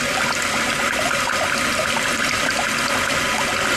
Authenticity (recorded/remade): recorded